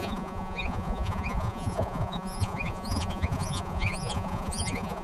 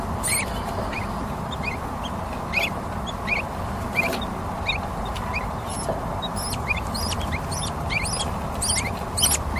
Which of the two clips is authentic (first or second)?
second